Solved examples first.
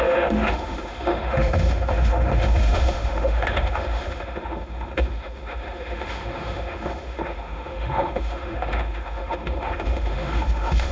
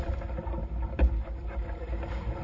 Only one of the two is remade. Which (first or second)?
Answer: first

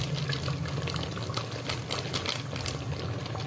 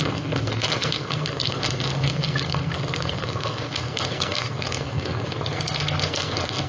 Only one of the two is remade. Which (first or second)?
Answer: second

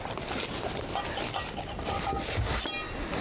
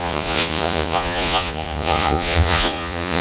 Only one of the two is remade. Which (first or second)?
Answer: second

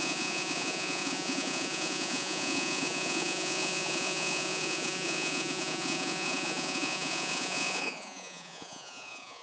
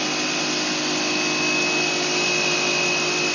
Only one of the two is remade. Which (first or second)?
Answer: first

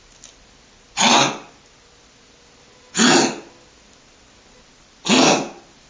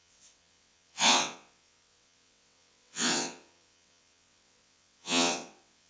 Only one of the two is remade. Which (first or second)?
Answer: second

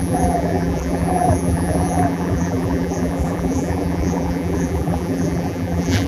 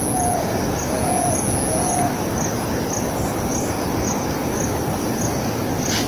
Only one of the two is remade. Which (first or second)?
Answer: first